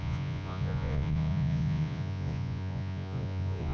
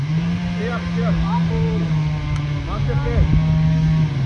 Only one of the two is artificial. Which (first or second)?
first